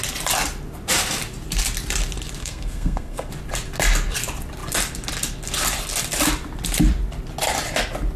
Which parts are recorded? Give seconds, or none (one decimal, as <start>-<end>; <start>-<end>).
0.0-2.4; 3.3-8.2